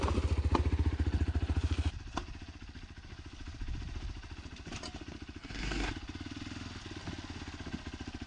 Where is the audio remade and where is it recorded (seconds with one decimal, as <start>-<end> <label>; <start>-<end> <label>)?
0.0-5.4 recorded; 5.4-5.9 remade; 5.9-8.3 recorded